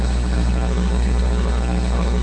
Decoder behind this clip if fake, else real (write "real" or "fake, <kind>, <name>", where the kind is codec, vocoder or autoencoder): fake, codec, SNAC